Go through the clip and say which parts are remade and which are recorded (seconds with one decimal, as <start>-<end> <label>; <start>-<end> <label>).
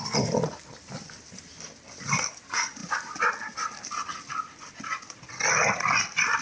0.0-6.4 recorded